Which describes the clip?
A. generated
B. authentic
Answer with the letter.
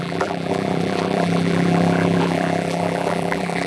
A